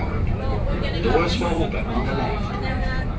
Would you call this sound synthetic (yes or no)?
yes